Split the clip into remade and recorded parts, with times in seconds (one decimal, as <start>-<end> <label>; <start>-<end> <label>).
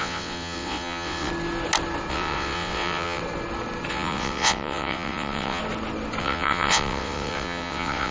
0.0-1.3 remade; 1.3-2.1 recorded; 2.1-3.2 remade; 3.2-3.9 recorded; 3.9-5.6 remade; 5.6-6.2 recorded; 6.2-8.1 remade